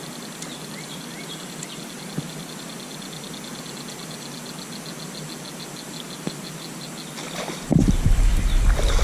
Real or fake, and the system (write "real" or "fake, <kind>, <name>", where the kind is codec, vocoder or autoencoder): real